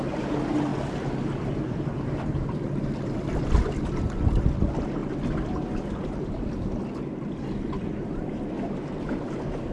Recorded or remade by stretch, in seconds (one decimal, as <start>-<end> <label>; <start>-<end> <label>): 0.0-0.7 recorded; 0.7-3.6 remade; 3.6-5.0 recorded; 5.0-6.0 remade; 6.0-9.7 recorded

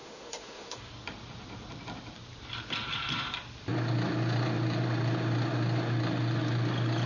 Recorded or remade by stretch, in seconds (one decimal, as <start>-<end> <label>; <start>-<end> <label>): 0.0-0.9 remade; 0.9-7.1 recorded

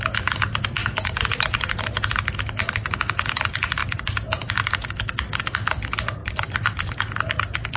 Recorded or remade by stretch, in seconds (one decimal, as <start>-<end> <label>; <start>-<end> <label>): 0.0-0.8 recorded; 0.8-1.8 remade; 1.8-3.8 recorded; 3.8-4.9 remade; 4.9-6.2 recorded; 6.2-6.9 remade; 6.9-7.8 recorded

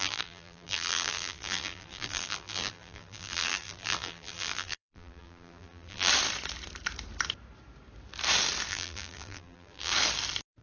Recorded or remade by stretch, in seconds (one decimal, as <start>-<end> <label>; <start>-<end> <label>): 0.0-6.1 remade; 6.1-8.7 recorded; 8.7-9.9 remade; 9.9-10.6 recorded

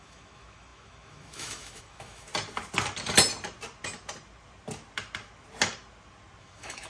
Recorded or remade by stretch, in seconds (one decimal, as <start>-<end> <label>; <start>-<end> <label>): 0.0-2.3 remade; 2.3-6.4 recorded; 6.4-6.9 remade

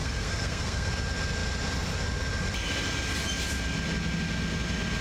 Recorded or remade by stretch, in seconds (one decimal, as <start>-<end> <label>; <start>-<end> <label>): 0.0-0.9 remade; 0.9-5.0 recorded

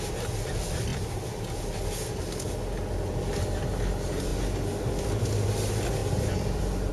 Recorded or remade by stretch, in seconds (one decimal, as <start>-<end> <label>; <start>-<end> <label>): 0.0-6.0 recorded; 6.0-6.9 remade